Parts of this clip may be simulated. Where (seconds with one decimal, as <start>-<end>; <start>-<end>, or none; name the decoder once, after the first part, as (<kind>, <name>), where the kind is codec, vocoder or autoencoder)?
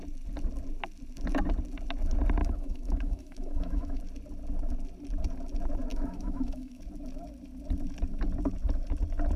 2.4-4.0 (autoencoder, DAC-VAE); 5.9-6.8